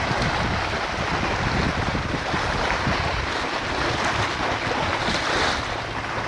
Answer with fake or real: real